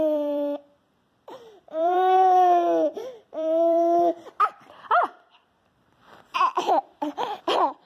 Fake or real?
fake